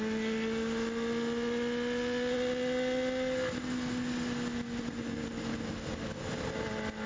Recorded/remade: recorded